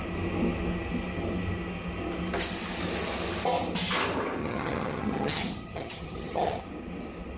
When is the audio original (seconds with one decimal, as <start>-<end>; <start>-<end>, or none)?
0.0-4.4; 6.6-7.4